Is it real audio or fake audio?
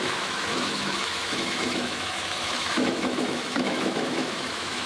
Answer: fake